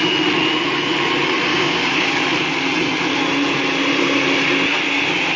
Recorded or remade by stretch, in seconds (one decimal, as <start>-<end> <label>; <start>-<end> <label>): 0.0-1.5 recorded; 1.5-2.2 remade; 2.2-5.4 recorded

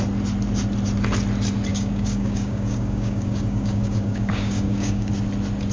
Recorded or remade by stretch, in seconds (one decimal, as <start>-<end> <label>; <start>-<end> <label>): 0.0-1.7 recorded; 1.7-5.1 remade; 5.1-5.7 recorded

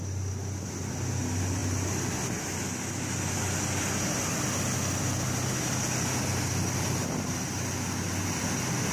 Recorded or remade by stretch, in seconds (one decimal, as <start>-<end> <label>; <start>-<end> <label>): 0.0-8.9 recorded

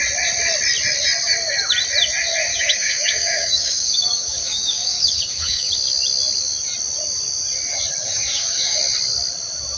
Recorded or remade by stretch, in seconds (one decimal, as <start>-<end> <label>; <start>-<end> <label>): 0.0-2.5 recorded; 2.5-5.7 remade; 5.7-8.0 recorded; 8.0-8.8 remade; 8.8-9.8 recorded

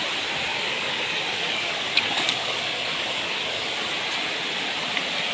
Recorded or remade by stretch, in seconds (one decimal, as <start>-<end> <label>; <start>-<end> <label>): 0.0-0.5 recorded; 0.5-3.7 remade; 3.7-5.3 recorded